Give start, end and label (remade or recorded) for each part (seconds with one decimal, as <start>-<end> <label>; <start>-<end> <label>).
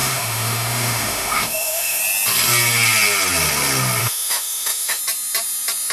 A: 0.0-2.0 remade; 2.0-4.0 recorded; 4.0-5.0 remade; 5.0-5.9 recorded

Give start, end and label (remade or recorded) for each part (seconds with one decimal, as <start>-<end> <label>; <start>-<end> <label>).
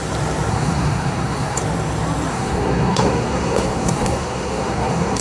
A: 0.0-0.5 recorded; 0.5-1.6 remade; 1.6-2.3 recorded; 2.3-5.2 remade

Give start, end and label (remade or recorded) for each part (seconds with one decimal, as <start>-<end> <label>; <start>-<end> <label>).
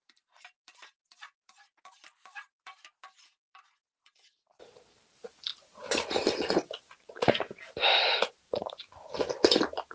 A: 0.0-9.9 remade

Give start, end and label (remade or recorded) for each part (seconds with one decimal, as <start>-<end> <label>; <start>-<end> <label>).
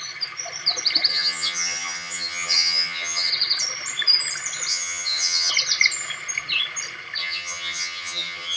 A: 0.0-1.1 recorded; 1.1-3.3 remade; 3.3-4.7 recorded; 4.7-5.5 remade; 5.5-7.2 recorded; 7.2-8.6 remade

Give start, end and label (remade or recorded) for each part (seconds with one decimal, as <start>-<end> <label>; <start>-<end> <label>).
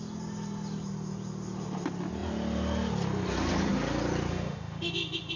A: 0.0-4.3 recorded; 4.3-4.9 remade; 4.9-5.4 recorded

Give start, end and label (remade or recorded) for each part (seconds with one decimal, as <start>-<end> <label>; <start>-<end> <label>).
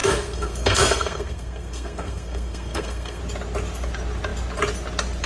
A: 0.0-3.2 remade; 3.2-5.3 recorded